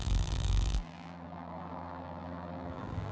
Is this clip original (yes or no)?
no